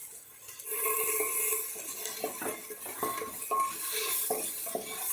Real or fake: real